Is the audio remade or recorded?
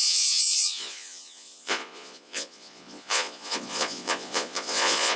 remade